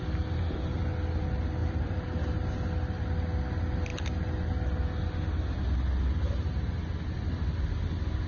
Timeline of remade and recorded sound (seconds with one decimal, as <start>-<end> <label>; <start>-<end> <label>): 0.0-1.6 recorded; 1.6-2.3 remade; 2.3-8.3 recorded